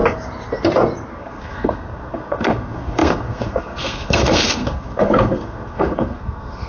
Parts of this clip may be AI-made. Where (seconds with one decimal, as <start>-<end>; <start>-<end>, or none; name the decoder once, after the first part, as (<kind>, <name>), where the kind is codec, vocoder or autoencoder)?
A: 1.1-6.7 (codec, SNAC)

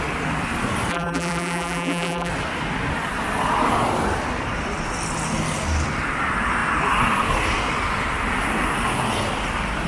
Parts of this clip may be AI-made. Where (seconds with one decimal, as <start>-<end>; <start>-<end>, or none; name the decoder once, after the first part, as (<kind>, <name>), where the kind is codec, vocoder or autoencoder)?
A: 0.9-2.3 (vocoder, BigVGAN v2)

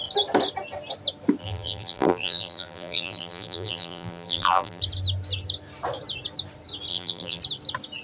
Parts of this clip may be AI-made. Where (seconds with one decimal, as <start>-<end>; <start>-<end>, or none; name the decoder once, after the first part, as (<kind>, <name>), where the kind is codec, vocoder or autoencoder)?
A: 1.4-4.8 (vocoder, BigVGAN v2); 6.9-7.4

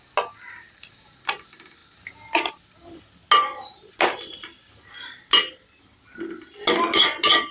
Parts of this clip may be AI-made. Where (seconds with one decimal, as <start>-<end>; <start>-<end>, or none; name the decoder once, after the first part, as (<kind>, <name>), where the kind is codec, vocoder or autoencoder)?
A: none

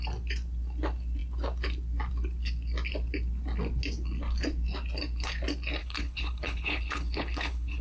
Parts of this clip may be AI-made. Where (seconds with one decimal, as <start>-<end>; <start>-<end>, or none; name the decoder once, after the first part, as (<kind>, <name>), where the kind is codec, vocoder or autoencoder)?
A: 5.8-7.8 (codec, HILCodec)

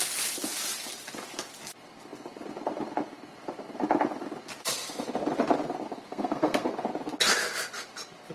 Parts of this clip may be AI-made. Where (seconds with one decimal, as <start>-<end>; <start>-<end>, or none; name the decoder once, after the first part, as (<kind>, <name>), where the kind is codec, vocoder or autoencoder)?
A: 6.1-6.7 (codec, SNAC)

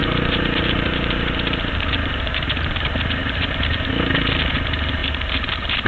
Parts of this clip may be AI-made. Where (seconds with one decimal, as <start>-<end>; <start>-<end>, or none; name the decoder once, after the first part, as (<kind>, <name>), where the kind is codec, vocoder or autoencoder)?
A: 0.0-2.4 (vocoder, BigVGAN v2); 3.2-3.9; 5.0-5.9